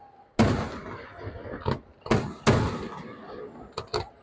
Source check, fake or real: real